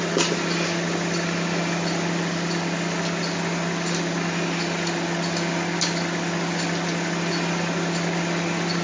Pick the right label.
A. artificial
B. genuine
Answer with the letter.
B